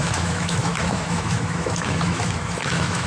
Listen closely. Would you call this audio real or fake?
fake